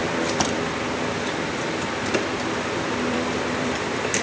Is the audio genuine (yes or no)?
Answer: no